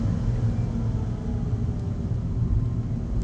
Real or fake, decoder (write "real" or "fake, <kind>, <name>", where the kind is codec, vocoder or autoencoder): real